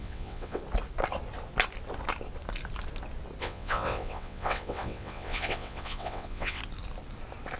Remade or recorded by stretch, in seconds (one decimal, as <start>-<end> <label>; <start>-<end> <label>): 0.0-0.6 remade; 0.6-3.4 recorded; 3.4-6.6 remade; 6.6-7.6 recorded